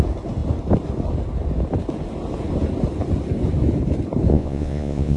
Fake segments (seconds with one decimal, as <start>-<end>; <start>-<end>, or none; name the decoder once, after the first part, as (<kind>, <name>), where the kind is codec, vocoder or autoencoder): 4.3-5.2 (vocoder, Vocos)